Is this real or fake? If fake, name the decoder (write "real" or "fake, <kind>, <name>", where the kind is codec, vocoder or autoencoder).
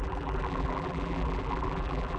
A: fake, vocoder, BigVGAN v2